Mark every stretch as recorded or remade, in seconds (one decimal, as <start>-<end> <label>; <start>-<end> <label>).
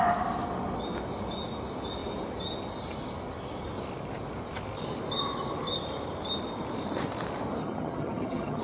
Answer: 0.0-7.6 recorded; 7.6-8.6 remade